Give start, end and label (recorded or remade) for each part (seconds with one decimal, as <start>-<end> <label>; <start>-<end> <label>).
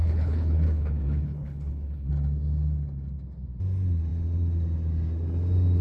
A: 0.0-2.1 remade; 2.1-5.8 recorded